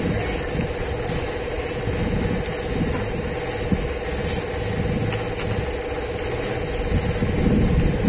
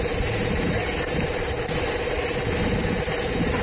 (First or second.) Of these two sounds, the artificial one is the second